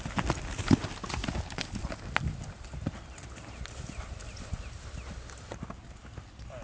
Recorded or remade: recorded